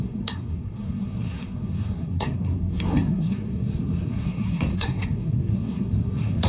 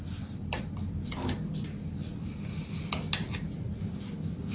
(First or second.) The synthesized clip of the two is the first